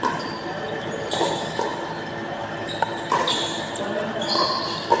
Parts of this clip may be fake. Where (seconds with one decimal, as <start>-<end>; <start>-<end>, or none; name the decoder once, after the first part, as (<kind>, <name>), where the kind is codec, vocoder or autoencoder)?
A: none